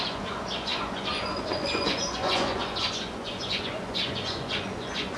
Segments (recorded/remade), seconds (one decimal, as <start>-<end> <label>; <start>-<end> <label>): 0.0-5.2 remade